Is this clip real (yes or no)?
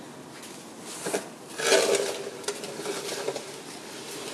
yes